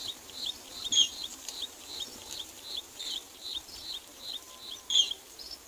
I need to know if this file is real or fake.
fake